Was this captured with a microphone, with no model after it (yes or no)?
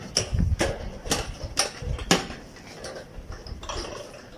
yes